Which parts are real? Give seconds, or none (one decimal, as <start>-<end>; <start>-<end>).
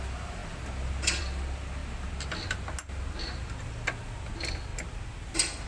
0.0-5.7